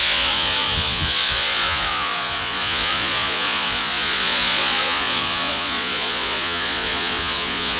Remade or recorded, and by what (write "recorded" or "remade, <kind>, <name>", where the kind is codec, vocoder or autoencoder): remade, vocoder, Vocos